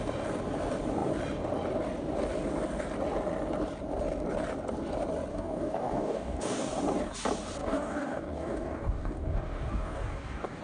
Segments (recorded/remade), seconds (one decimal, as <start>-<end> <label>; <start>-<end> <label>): 0.0-5.3 recorded; 5.3-6.7 remade; 6.7-7.6 recorded; 7.6-10.6 remade